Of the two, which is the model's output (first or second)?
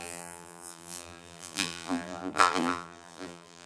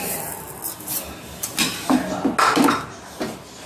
first